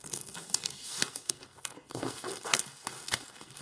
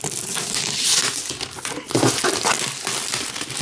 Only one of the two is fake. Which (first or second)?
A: first